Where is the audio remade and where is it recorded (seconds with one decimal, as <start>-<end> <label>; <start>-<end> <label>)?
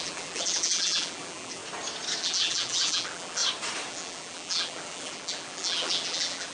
0.0-1.6 remade; 1.6-2.2 recorded; 2.2-3.4 remade; 3.4-3.9 recorded; 3.9-6.5 remade